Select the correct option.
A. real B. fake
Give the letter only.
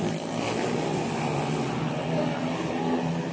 A